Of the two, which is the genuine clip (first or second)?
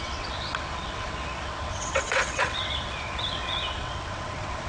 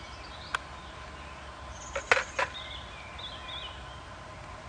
second